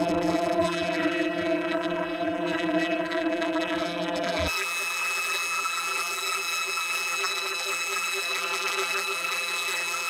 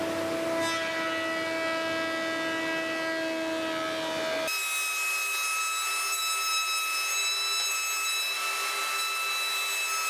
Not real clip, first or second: first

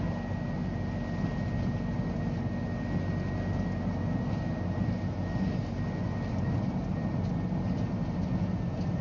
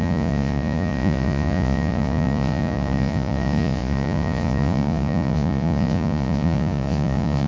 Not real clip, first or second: second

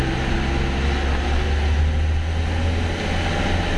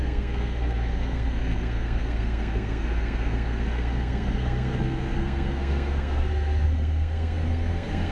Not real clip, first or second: second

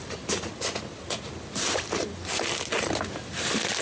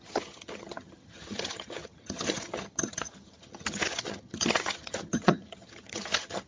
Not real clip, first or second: second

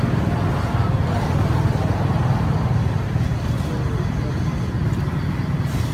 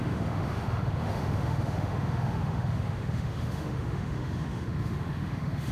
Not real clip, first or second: second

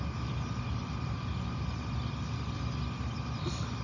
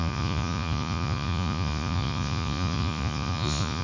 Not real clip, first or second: second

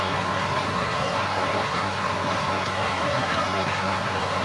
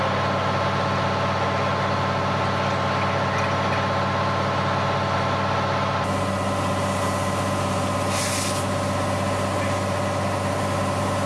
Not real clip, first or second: first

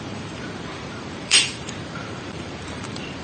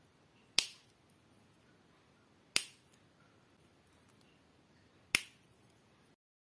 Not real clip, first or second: first